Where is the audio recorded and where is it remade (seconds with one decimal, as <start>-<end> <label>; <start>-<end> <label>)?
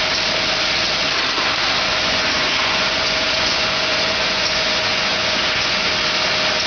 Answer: 0.0-1.9 recorded; 1.9-5.9 remade; 5.9-6.7 recorded